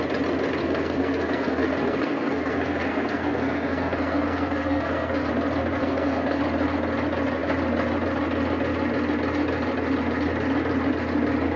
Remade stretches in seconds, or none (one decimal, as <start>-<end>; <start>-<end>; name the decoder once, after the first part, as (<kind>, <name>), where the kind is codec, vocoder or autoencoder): 0.6-5.3 (codec, SNAC); 5.8-6.4

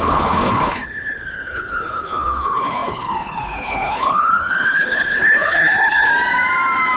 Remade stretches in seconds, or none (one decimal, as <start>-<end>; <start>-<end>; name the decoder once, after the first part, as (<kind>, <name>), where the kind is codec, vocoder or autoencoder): 0.0-6.1 (codec, HILCodec)

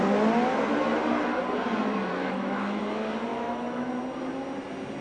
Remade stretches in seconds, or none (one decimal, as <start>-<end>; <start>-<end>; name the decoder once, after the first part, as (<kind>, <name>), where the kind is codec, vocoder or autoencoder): 2.1-2.8 (autoencoder, DAC-VAE); 3.3-3.9

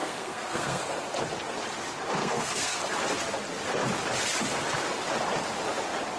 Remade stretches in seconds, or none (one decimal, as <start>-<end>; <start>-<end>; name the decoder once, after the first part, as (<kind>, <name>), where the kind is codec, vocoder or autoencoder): 0.0-0.8 (codec, SNAC); 2.2-2.8

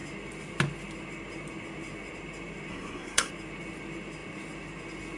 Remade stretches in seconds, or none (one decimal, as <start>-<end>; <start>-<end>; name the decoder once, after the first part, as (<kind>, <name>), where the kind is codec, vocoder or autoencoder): 2.7-3.3 (codec, SNAC)

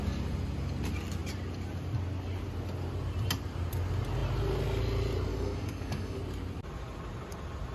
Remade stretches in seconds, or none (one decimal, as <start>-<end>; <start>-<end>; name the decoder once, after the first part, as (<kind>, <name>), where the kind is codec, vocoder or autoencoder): 5.3-6.2 (codec, DAC)

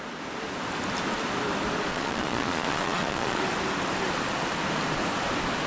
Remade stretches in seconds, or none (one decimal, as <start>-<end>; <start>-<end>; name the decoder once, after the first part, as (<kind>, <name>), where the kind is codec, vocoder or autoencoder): 1.9-3.4 (vocoder, Vocos)